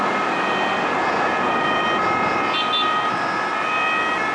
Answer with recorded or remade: recorded